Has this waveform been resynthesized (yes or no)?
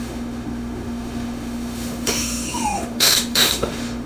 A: yes